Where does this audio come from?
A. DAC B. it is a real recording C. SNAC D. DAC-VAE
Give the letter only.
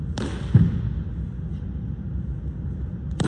B